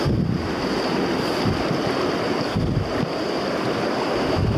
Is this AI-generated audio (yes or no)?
no